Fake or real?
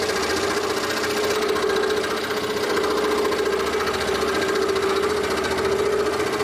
real